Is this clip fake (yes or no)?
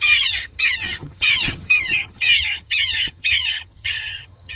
yes